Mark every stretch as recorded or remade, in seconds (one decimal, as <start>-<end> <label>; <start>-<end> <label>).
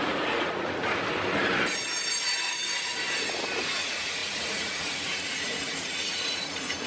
0.0-0.8 remade; 0.8-2.4 recorded; 2.4-2.9 remade; 2.9-3.6 recorded; 3.6-6.9 remade